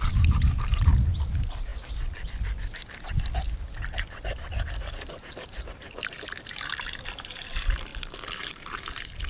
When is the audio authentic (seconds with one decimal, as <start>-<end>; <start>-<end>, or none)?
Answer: 1.7-4.9; 7.9-8.5